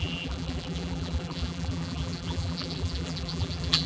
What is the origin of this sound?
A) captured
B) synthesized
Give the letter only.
B